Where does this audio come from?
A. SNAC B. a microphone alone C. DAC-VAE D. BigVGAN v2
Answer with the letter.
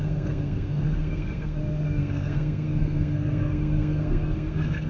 A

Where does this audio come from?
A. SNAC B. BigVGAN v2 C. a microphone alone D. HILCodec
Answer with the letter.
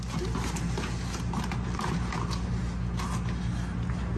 C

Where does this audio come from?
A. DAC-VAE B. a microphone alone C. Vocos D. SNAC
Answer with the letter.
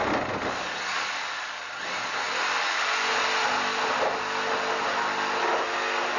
B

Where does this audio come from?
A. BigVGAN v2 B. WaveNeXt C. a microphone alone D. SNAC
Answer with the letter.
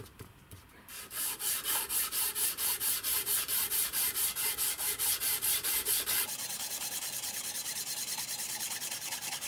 A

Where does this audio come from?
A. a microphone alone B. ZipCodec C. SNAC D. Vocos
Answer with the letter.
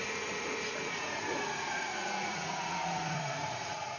D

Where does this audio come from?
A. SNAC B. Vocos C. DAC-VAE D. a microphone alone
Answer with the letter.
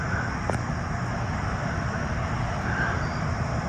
D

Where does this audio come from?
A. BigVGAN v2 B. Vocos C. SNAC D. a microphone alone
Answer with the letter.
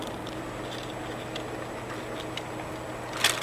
D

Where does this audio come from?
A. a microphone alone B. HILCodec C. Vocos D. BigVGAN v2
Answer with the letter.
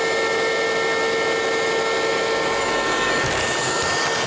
A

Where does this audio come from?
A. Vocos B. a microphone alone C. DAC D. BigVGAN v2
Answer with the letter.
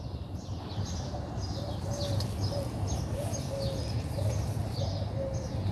B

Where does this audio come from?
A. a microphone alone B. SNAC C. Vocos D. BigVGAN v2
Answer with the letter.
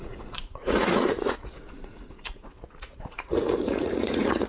C